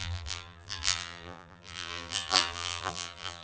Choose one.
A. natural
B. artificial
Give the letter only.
B